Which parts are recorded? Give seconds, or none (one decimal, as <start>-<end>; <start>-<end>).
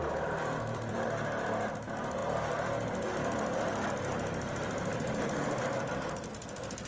0.9-6.9